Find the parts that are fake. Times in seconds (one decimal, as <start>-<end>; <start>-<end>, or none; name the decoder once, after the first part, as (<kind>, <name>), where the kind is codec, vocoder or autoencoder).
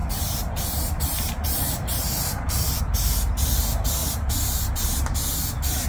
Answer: 0.0-2.8 (vocoder, BigVGAN v2); 4.0-4.7